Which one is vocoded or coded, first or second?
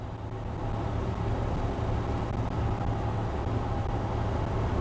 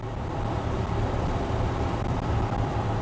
second